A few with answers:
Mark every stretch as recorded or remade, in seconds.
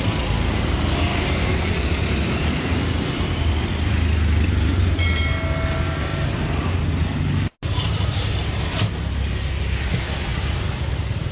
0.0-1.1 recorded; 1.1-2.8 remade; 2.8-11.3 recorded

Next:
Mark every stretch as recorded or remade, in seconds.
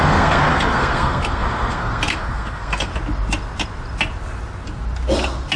0.0-2.9 remade; 2.9-5.6 recorded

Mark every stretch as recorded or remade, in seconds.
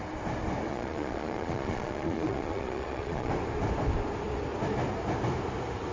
0.0-0.7 recorded; 0.7-3.3 remade; 3.3-5.9 recorded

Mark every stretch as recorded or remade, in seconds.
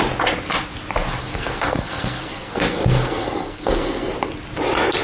0.0-1.2 recorded; 1.2-4.1 remade; 4.1-5.0 recorded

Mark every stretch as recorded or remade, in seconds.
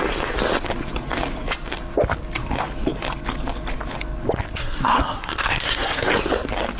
0.0-4.6 recorded; 4.6-6.1 remade; 6.1-6.8 recorded